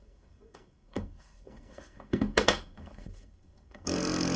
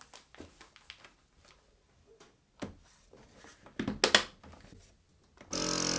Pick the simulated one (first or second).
first